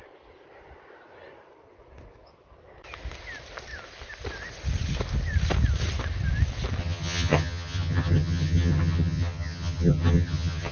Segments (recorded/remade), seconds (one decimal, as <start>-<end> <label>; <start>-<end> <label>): 0.0-6.8 recorded; 6.8-10.7 remade